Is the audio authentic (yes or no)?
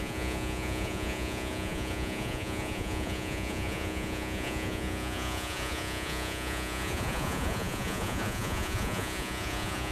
no